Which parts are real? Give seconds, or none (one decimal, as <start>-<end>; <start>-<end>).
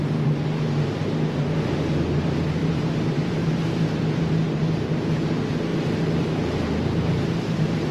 0.0-1.0; 1.5-2.6; 4.0-5.7